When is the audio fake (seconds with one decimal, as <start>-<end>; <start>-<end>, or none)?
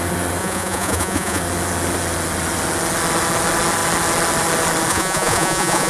0.4-1.4; 4.9-5.9